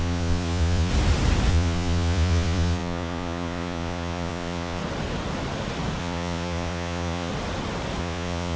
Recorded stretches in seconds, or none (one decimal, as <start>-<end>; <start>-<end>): 0.9-1.5; 4.8-6.0; 7.3-8.0